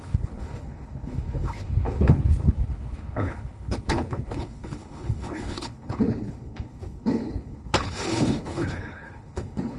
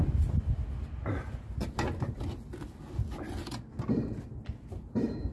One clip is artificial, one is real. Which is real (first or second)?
second